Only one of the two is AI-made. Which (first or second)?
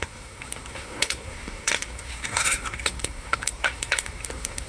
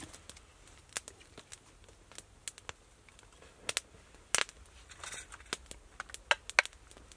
first